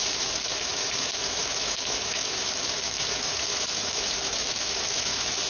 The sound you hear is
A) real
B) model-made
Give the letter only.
B